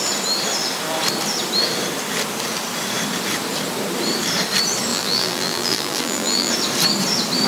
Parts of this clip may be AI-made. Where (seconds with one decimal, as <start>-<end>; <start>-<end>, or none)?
4.9-6.5